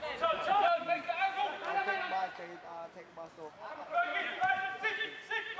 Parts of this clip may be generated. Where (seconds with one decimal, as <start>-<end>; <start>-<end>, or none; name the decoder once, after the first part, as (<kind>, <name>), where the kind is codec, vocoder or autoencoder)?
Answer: 0.5-1.2 (vocoder, BigVGAN v2)